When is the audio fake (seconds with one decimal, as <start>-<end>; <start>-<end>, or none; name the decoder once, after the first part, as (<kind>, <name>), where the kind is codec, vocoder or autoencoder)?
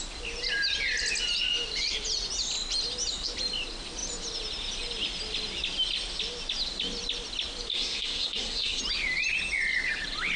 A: 7.7-8.8 (codec, SNAC)